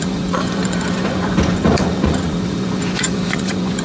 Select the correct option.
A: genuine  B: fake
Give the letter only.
B